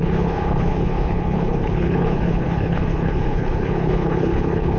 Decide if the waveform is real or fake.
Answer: fake